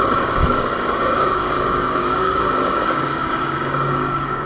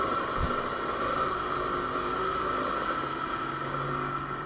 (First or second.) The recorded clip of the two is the second